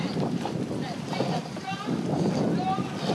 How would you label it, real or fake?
real